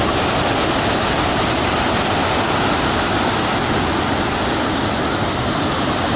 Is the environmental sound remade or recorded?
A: recorded